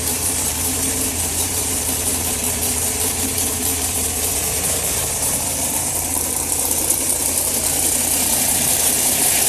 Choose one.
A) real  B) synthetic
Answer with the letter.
B